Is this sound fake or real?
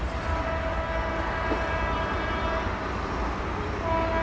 real